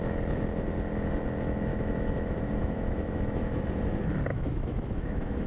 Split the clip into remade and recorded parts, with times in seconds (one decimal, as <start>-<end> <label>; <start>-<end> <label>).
0.0-1.7 recorded; 1.7-3.6 remade; 3.6-4.3 recorded; 4.3-5.5 remade